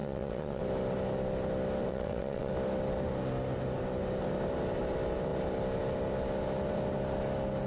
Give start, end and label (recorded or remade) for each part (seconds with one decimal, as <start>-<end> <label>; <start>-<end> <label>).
0.0-0.6 remade; 0.6-1.9 recorded; 1.9-2.5 remade; 2.5-7.7 recorded